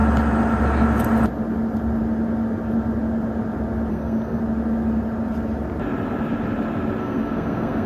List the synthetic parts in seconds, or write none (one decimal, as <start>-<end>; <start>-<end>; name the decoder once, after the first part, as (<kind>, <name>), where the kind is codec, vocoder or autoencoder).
3.9-4.4 (codec, SNAC); 7.0-7.9